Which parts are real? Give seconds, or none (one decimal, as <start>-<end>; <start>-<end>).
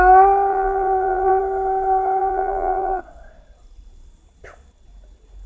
0.0-0.5; 1.4-2.2; 3.0-5.5